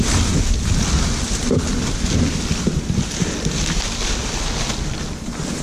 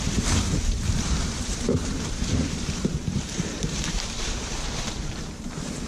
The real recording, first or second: first